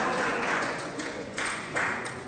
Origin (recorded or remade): remade